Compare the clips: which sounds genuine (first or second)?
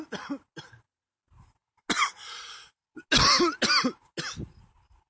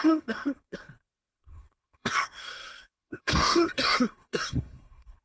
first